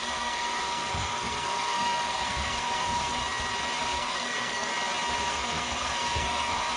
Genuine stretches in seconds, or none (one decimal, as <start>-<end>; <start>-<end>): 3.2-3.8; 4.7-5.2